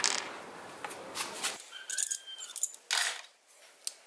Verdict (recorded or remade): recorded